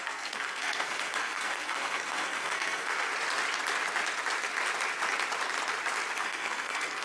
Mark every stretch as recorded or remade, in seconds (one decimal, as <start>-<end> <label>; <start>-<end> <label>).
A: 0.0-3.1 remade; 3.1-6.2 recorded; 6.2-7.0 remade